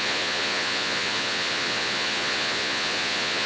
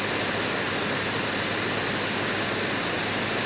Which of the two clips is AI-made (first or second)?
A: first